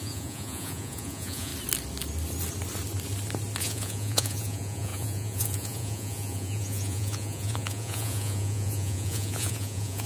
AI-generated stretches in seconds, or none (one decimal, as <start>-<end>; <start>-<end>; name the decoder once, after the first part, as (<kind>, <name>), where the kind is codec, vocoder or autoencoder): 0.0-1.5 (vocoder, Vocos); 3.6-10.1